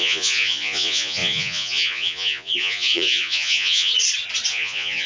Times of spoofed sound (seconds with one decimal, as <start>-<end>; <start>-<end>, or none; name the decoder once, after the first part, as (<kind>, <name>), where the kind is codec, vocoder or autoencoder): 0.0-3.9 (vocoder, Vocos); 4.5-5.1